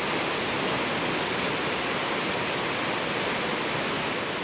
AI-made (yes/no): no